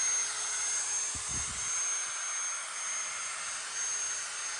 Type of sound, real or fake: real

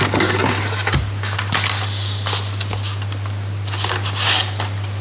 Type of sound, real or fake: real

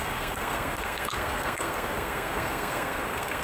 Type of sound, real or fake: fake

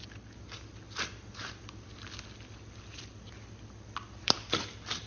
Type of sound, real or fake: real